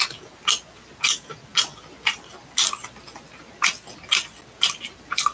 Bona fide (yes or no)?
yes